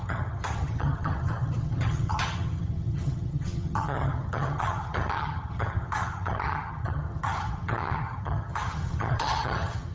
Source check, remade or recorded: remade